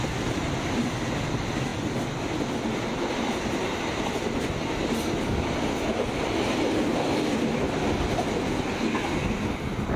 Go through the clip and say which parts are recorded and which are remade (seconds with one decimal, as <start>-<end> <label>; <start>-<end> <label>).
0.0-10.0 recorded